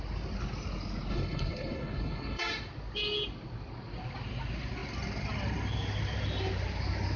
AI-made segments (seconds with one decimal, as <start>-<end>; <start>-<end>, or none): 1.1-2.4